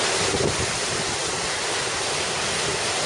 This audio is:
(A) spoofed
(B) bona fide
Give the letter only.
B